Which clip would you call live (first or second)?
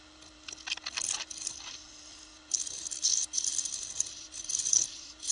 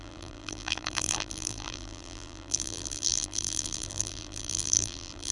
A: first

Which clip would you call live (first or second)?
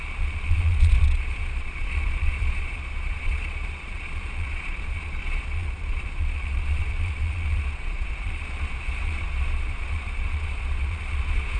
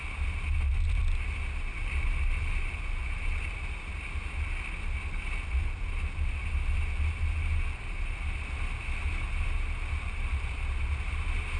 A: second